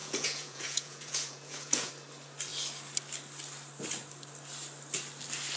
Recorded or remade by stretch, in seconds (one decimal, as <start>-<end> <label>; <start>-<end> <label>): 0.0-1.9 remade; 1.9-5.6 recorded

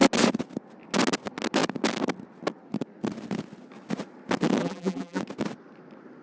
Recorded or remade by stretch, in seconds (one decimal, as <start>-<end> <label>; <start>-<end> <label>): 0.0-4.6 recorded; 4.6-5.2 remade; 5.2-6.2 recorded